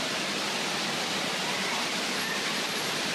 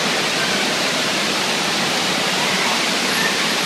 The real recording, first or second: first